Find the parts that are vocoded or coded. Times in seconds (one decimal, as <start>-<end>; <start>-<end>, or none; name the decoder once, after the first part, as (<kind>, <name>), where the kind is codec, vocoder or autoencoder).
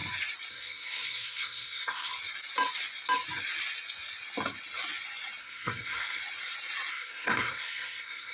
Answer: 0.5-2.1 (codec, SNAC); 5.4-6.2; 6.9-8.3